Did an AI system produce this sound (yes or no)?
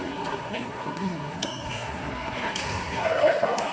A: yes